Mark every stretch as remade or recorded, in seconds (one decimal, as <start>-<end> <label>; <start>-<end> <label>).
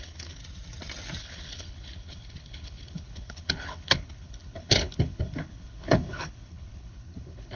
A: 0.0-0.4 remade; 0.4-1.2 recorded; 1.2-7.6 remade